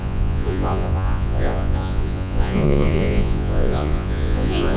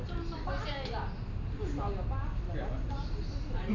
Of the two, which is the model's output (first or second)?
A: first